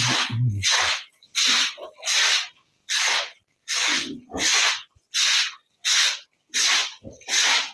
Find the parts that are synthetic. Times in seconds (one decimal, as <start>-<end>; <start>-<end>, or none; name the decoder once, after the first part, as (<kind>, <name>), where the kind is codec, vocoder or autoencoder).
3.6-5.9 (vocoder, Vocos)